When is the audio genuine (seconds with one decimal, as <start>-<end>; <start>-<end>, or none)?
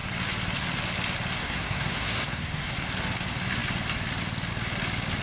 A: 0.0-1.4; 2.7-5.2